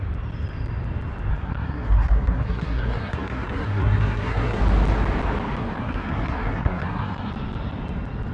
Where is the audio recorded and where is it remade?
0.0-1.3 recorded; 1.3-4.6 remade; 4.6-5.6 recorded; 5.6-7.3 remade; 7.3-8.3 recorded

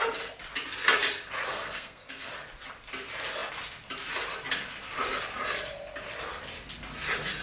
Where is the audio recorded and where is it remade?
0.0-1.5 recorded; 1.5-2.3 remade; 2.3-7.4 recorded

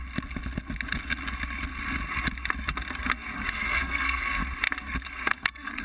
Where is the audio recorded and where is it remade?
0.0-3.5 recorded; 3.5-4.4 remade; 4.4-5.3 recorded; 5.3-5.8 remade

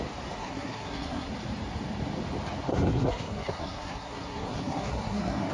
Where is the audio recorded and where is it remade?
0.0-0.4 recorded; 0.4-1.3 remade; 1.3-2.7 recorded; 2.7-5.5 remade

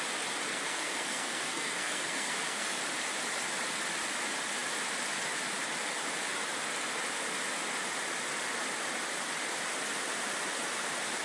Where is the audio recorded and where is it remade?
0.0-0.5 recorded; 0.5-2.8 remade; 2.8-11.2 recorded

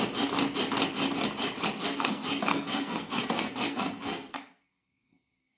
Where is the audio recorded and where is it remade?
0.0-1.8 recorded; 1.8-5.6 remade

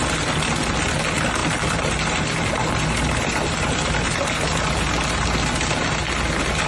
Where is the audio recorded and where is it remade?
0.0-6.7 recorded